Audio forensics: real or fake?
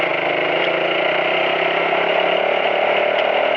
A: real